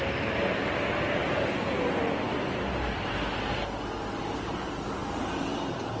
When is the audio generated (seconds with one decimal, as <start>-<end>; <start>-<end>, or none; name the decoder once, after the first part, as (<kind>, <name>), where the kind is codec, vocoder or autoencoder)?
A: none